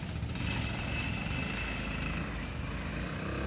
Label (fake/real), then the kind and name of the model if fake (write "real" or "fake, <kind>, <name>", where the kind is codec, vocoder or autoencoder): real